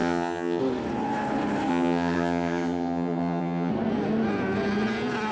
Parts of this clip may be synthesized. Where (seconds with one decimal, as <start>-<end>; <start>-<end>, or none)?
0.0-0.6; 1.7-3.7

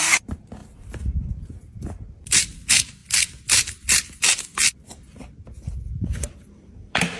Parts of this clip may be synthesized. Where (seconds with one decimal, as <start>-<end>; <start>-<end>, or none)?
0.0-3.0; 6.3-7.2